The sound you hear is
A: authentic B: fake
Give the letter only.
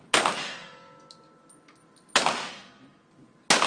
A